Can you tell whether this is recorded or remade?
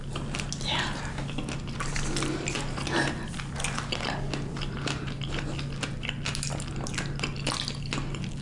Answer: recorded